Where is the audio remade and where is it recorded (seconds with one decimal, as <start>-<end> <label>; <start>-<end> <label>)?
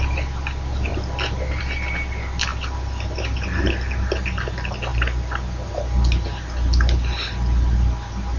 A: 0.0-8.4 recorded